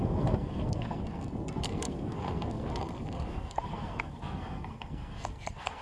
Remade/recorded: remade